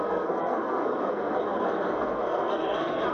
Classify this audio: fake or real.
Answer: fake